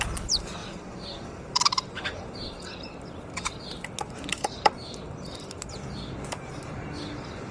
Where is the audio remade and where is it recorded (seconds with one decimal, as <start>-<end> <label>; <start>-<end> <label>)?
0.0-0.6 recorded; 0.6-2.3 remade; 2.3-4.3 recorded; 4.3-5.0 remade; 5.0-7.5 recorded